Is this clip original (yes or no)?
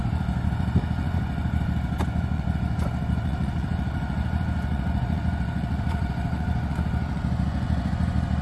no